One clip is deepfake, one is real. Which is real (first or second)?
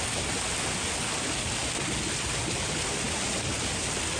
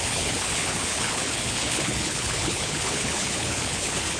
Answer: first